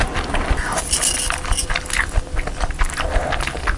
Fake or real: real